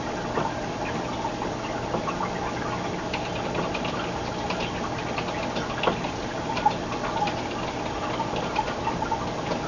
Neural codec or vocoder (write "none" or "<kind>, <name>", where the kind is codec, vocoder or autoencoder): none